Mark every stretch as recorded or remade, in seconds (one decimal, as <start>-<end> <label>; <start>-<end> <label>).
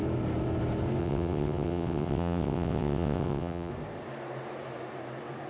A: 0.0-1.0 recorded; 1.0-3.7 remade; 3.7-5.5 recorded